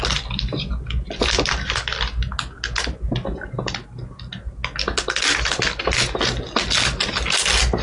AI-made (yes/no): no